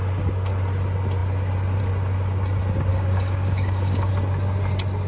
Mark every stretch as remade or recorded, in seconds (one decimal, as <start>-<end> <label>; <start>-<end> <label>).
0.0-2.9 recorded; 2.9-4.1 remade; 4.1-5.1 recorded